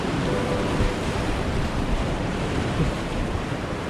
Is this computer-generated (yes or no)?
yes